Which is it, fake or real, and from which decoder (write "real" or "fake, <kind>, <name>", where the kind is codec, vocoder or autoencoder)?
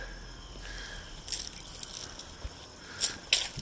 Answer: real